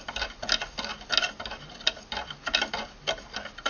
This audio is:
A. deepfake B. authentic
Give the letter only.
B